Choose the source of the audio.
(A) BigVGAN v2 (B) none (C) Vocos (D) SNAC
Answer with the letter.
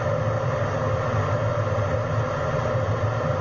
B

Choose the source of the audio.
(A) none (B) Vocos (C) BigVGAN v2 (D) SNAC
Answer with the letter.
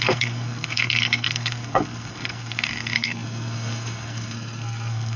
D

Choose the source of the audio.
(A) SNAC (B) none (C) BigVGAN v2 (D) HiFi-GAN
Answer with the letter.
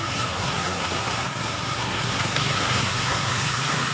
A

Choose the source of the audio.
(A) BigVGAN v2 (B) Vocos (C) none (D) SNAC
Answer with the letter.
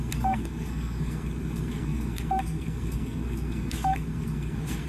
D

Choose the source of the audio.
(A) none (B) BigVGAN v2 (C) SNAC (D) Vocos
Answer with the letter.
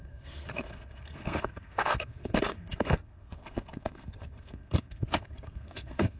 C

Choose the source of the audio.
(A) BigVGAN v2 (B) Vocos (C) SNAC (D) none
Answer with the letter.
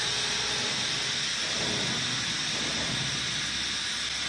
D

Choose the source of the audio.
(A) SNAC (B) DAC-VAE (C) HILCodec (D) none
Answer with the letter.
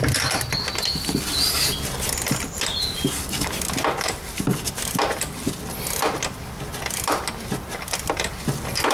D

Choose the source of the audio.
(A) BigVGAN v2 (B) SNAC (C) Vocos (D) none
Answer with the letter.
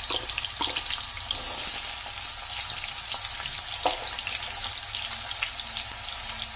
D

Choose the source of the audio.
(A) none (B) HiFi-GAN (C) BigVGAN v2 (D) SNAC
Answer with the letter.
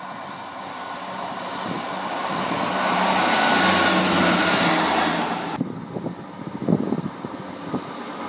A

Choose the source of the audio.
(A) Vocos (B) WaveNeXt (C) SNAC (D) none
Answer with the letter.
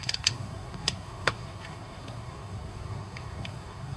C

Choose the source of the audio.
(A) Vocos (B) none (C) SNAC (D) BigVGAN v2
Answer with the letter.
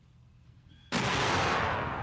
C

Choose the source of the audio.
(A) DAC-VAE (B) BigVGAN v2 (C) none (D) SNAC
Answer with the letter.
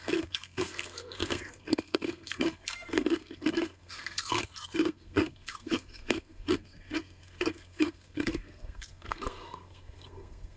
D